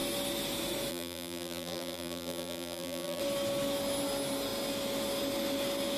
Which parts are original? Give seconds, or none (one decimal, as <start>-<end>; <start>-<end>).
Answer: 0.0-0.9; 3.2-6.0